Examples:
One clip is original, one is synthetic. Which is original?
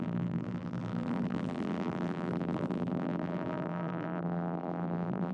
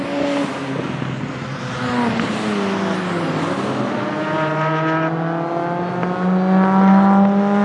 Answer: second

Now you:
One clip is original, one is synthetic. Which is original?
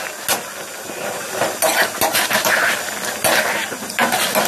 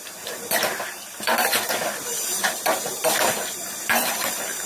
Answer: first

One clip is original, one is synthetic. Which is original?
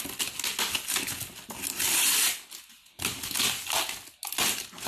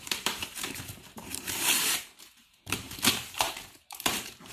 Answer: first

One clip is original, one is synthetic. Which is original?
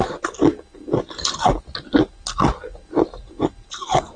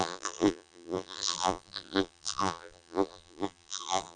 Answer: first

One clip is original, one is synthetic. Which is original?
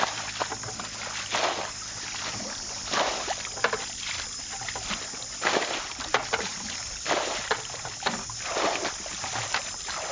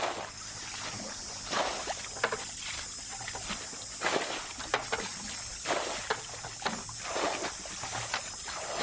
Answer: second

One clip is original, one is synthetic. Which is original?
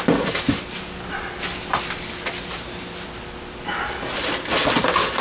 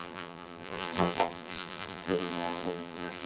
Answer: first